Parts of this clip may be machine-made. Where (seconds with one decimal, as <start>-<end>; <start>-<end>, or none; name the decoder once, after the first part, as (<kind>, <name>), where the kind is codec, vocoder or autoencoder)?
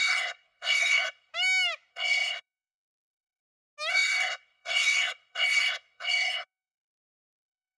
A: 0.0-1.3 (codec, SNAC); 1.9-3.4; 3.9-7.8